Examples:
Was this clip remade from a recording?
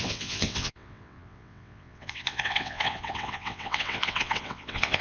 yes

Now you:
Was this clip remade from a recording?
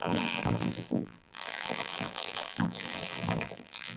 yes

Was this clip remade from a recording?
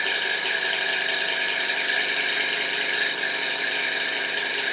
no